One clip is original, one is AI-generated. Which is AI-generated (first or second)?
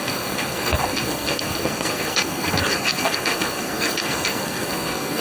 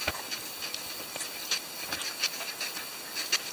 first